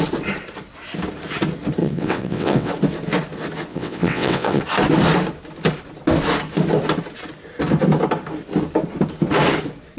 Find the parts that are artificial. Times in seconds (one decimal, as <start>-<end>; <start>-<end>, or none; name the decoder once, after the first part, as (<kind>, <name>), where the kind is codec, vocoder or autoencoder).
1.8-2.7 (vocoder, WaveNeXt); 3.7-4.6